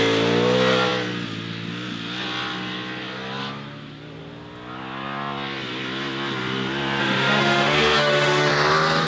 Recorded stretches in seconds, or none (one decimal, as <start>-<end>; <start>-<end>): 0.0-7.0; 8.5-9.1